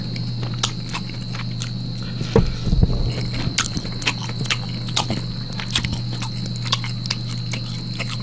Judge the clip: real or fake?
real